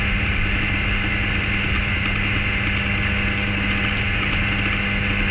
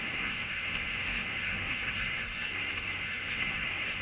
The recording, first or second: first